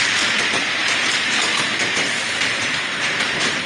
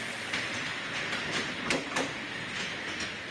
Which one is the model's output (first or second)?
first